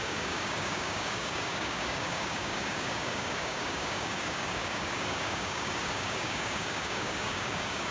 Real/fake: fake